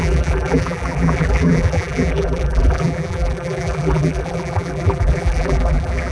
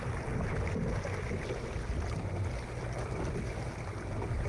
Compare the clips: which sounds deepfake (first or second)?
first